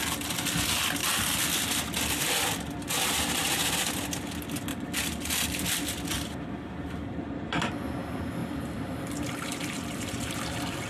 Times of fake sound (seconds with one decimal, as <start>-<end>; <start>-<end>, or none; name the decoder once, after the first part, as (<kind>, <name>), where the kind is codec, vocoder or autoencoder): 4.7-7.7 (vocoder, BigVGAN v2); 8.4-10.9